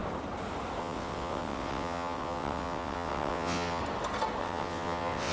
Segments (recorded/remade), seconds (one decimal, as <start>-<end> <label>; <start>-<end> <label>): 0.0-0.8 recorded; 0.8-3.8 remade; 3.8-4.4 recorded; 4.4-5.3 remade

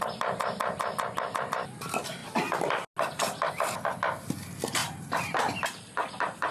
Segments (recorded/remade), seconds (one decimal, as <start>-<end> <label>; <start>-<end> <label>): 0.0-4.8 recorded; 4.8-6.5 remade

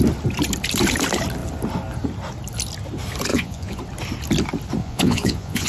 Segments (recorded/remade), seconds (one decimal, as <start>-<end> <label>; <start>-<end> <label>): 0.0-3.3 recorded; 3.3-3.8 remade; 3.8-4.8 recorded; 4.8-5.7 remade